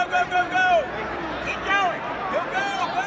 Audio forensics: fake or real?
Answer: real